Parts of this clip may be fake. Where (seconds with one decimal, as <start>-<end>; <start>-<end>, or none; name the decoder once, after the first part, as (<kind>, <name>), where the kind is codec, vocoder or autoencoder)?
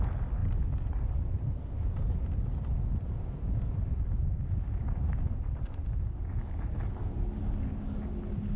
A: none